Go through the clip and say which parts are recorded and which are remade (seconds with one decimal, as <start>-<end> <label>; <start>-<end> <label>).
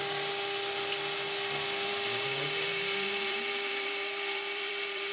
0.0-1.9 recorded; 1.9-5.1 remade